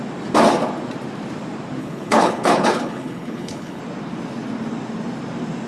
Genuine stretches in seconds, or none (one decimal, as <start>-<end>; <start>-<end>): 0.0-1.8; 3.8-5.7